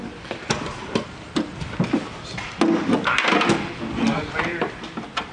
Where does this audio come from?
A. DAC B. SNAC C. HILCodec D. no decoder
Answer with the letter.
D